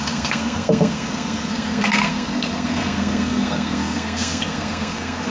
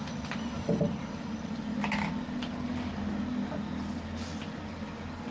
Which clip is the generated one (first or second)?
first